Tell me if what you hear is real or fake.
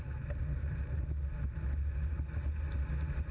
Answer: real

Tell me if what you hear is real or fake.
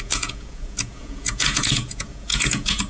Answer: fake